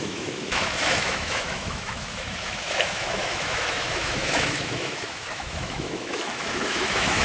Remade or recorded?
remade